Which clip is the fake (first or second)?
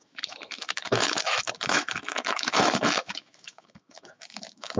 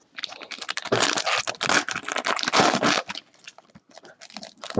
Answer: first